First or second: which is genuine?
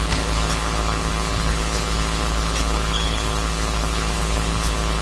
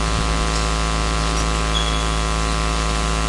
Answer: second